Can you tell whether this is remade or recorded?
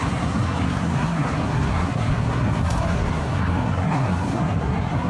remade